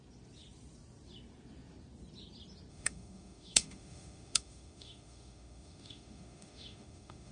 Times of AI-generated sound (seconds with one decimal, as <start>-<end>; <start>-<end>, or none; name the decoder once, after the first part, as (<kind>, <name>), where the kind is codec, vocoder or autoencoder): 2.7-7.3 (autoencoder, DAC-VAE)

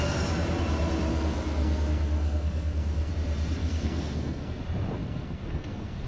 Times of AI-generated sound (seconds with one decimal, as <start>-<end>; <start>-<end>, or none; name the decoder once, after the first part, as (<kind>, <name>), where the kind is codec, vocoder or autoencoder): 1.1-3.1 (codec, SNAC); 3.6-4.6; 5.0-6.1

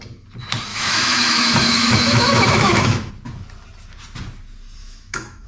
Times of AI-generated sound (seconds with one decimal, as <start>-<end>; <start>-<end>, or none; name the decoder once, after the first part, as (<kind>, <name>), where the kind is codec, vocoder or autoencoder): 0.7-3.1 (autoencoder, DAC-VAE); 4.8-5.5

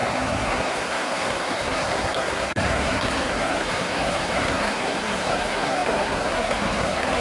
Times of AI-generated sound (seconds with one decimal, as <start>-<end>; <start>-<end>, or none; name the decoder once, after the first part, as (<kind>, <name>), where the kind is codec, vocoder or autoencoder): 0.0-7.2 (codec, SNAC)

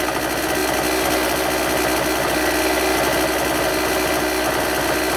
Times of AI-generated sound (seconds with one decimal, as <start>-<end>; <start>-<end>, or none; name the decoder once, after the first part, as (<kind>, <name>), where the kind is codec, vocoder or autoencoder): none

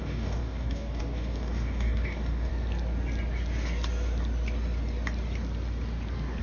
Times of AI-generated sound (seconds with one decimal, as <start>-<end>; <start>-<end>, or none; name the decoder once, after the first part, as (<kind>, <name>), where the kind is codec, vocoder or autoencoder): 0.0-2.5 (codec, DAC)

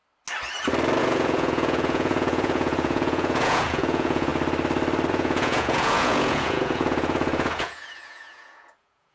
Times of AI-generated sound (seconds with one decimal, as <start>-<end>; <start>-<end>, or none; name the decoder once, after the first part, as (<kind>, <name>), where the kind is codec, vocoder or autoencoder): 1.0-4.3 (vocoder, Vocos); 5.1-9.1

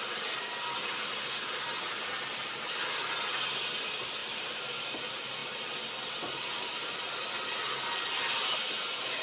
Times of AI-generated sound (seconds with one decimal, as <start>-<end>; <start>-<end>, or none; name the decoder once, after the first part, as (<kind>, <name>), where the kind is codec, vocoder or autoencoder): 4.2-5.0 (vocoder, BigVGAN v2)